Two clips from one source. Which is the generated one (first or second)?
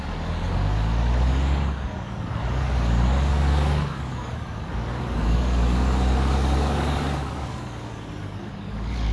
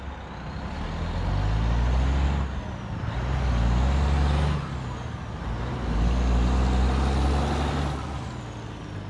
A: first